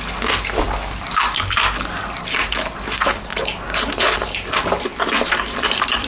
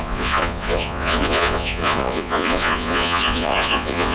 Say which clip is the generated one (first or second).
second